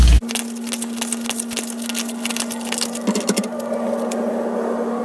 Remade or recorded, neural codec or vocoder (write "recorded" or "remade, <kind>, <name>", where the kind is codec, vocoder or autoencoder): recorded